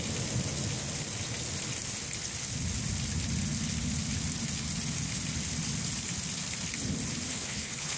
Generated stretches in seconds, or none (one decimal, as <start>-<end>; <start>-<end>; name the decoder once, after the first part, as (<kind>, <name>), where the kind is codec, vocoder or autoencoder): 7.3-8.0 (codec, HILCodec)